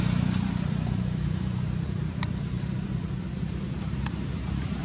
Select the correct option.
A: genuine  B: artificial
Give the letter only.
B